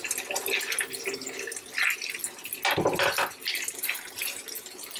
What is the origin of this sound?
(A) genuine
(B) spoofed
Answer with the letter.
A